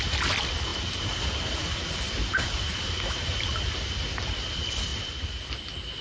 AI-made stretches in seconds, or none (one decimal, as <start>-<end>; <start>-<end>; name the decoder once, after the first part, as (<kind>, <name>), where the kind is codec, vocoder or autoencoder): none